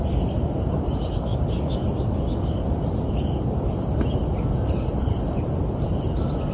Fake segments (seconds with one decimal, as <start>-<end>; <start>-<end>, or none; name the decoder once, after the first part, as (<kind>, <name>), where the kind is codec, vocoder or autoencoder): none